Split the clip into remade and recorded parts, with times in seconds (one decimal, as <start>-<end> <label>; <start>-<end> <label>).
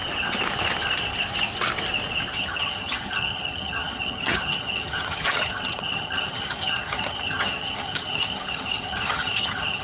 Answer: 0.0-2.3 recorded; 2.3-9.8 remade